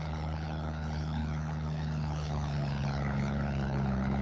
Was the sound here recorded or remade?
remade